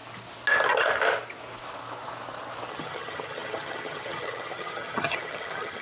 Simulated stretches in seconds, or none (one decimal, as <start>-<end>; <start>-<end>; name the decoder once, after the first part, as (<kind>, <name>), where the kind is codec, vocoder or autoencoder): 2.7-5.8 (vocoder, HiFi-GAN)